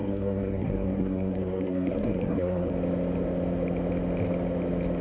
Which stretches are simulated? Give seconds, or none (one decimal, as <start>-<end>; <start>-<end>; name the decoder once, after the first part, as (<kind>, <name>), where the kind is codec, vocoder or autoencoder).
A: 0.0-2.7 (codec, SNAC)